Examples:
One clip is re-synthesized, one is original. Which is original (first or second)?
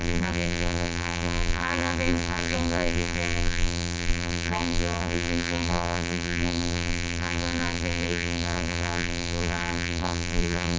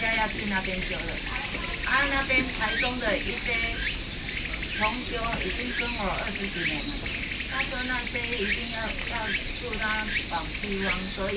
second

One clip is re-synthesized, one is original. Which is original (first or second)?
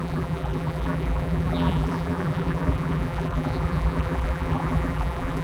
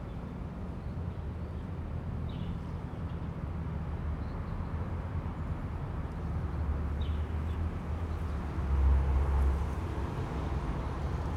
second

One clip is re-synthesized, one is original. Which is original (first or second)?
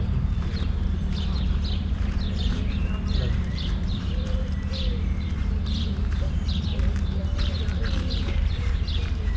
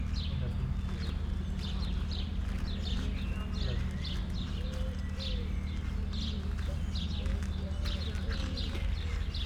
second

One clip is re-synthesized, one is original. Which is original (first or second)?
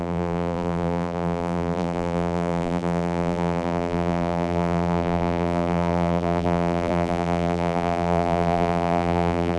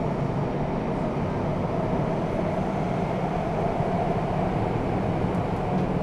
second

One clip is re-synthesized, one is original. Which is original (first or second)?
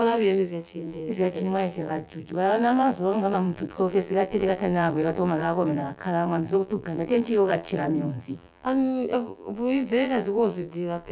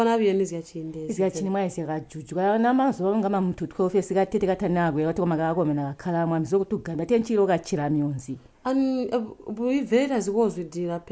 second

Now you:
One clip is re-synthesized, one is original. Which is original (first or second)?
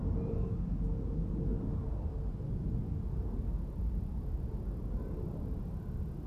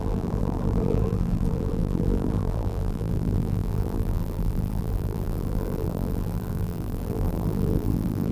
first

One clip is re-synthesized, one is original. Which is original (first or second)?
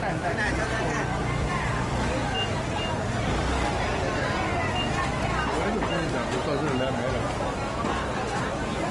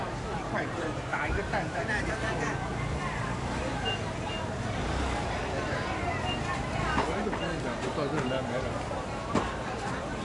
first